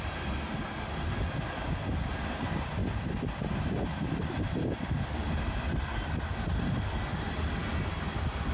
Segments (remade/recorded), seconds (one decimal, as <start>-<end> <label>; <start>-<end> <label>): 0.0-8.5 recorded